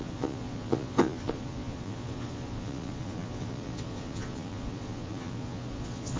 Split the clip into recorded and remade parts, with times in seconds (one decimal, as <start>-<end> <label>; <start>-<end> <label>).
0.0-6.2 remade